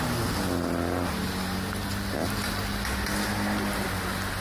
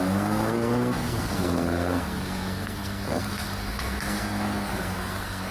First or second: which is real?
first